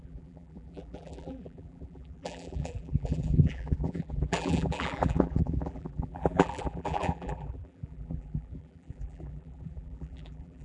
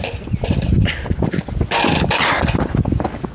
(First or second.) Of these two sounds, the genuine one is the second